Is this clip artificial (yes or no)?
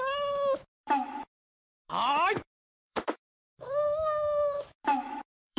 yes